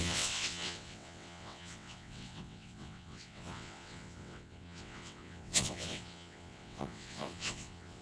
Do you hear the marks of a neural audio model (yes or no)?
yes